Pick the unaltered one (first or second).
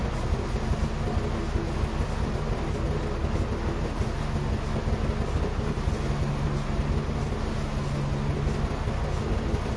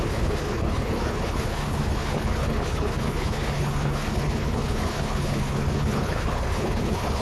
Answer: first